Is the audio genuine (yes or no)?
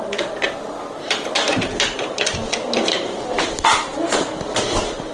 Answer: yes